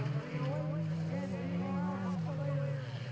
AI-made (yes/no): no